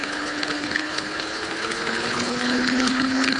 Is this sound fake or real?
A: fake